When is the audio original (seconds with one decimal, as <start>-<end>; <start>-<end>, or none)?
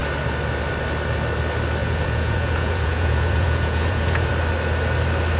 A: 0.0-1.8; 4.3-5.4